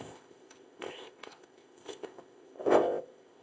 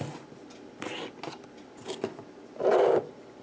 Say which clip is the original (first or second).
second